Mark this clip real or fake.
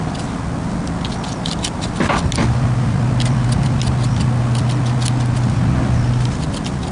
real